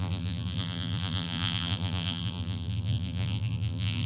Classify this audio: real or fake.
fake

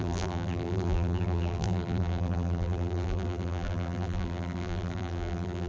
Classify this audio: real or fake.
fake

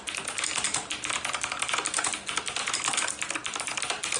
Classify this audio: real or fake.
fake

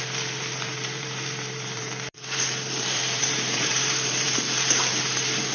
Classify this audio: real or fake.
fake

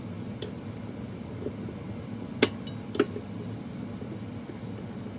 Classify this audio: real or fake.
real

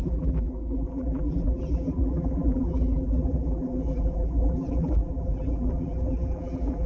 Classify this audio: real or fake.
fake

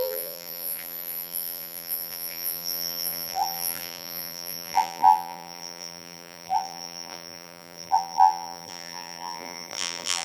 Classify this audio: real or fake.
fake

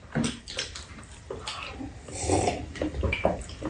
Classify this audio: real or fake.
fake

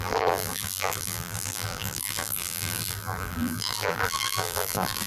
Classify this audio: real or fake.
fake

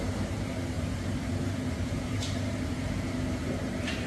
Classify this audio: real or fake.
fake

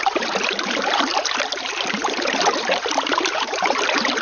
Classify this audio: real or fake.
fake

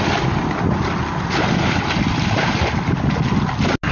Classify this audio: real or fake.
real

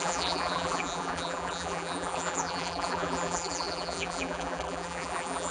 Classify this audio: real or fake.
fake